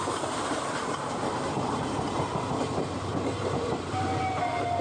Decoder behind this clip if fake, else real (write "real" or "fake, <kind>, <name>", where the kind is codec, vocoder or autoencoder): fake, vocoder, BigVGAN v2